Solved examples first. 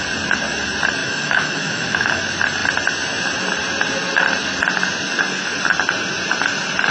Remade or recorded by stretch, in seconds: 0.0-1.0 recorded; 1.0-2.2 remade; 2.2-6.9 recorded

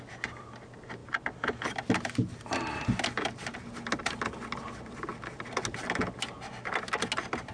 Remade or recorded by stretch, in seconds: 0.0-7.5 recorded

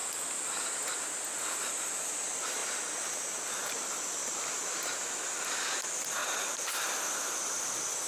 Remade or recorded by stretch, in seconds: 0.0-8.1 recorded

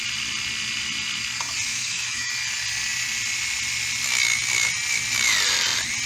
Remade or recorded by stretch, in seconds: 0.0-1.7 recorded; 1.7-2.3 remade; 2.3-6.1 recorded

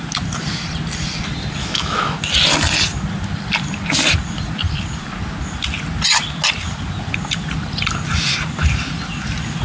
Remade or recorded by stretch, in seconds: 0.0-1.6 recorded; 1.6-2.2 remade; 2.2-9.6 recorded

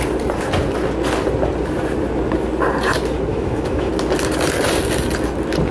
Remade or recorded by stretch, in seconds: 0.0-3.3 recorded; 3.3-3.9 remade; 3.9-5.7 recorded

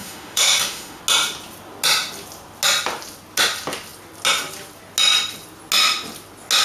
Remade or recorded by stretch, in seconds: 0.0-1.0 remade; 1.0-6.6 recorded

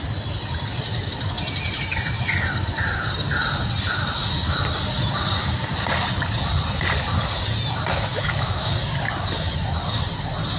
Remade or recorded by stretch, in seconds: 0.0-8.1 recorded; 8.1-8.7 remade; 8.7-10.6 recorded